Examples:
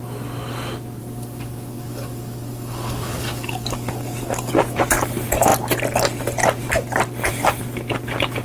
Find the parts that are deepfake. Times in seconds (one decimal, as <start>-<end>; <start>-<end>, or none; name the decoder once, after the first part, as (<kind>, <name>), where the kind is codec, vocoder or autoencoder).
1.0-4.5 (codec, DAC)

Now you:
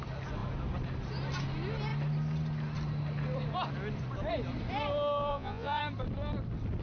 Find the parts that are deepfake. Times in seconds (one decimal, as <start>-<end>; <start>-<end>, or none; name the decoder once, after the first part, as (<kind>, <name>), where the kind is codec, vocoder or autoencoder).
5.3-5.8 (vocoder, Vocos)

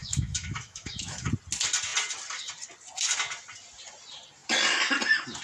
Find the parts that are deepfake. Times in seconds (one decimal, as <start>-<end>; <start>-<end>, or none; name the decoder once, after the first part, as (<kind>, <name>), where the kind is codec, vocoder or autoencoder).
0.0-1.3 (autoencoder, DAC-VAE)